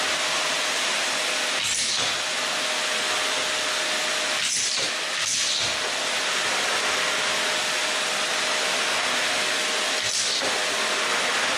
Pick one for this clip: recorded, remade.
recorded